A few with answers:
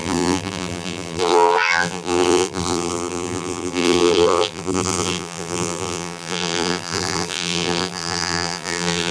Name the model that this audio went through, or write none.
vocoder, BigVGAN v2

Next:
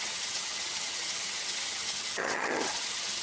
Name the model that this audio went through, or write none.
vocoder, HiFi-GAN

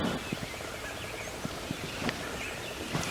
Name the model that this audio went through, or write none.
none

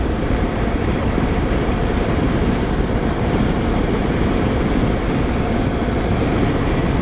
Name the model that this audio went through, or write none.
vocoder, BigVGAN v2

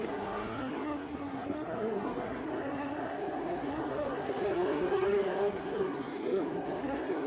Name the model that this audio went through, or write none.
codec, SNAC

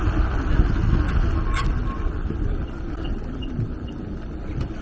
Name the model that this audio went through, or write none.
none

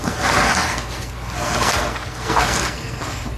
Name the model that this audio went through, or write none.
codec, SNAC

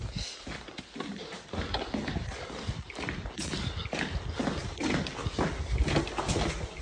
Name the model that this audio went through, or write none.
none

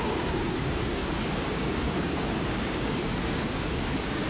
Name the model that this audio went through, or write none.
codec, DAC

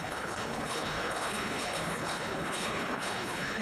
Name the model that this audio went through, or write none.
codec, HILCodec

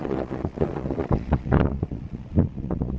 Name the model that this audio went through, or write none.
vocoder, Vocos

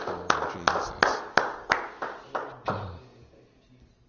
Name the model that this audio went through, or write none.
none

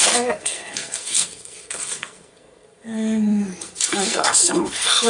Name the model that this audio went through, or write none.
codec, SNAC